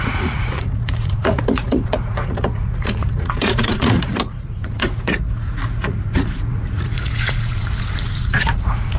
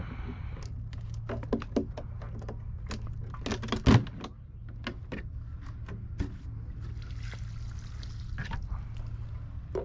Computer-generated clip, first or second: first